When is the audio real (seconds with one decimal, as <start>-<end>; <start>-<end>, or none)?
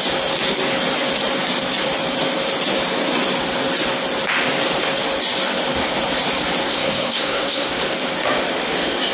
0.0-6.6; 7.7-9.1